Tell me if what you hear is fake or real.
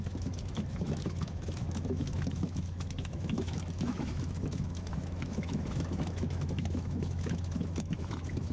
fake